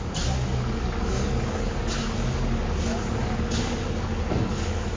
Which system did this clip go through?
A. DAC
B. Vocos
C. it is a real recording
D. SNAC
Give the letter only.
A